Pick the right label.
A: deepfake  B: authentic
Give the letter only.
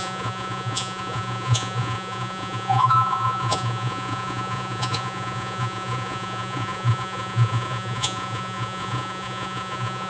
A